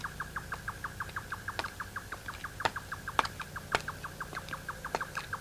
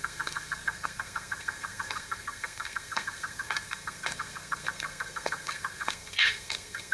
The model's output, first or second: second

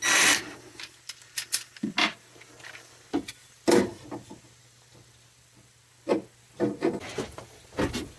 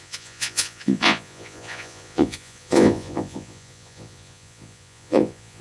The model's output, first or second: second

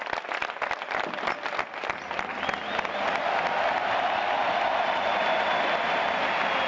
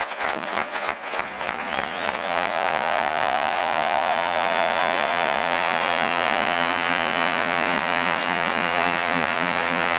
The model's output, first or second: second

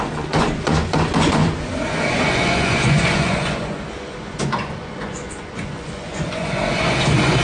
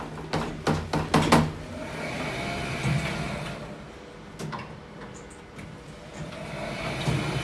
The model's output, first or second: first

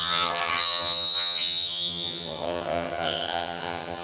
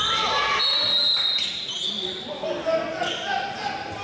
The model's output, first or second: first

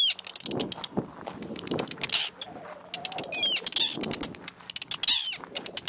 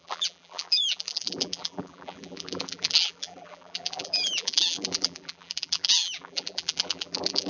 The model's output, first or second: second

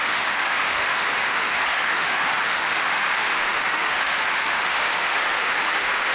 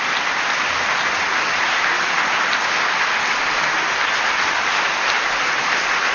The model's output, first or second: first